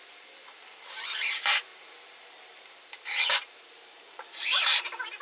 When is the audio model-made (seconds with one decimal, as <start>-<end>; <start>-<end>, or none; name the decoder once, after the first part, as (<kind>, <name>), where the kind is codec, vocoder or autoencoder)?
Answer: 0.0-5.2 (vocoder, BigVGAN v2)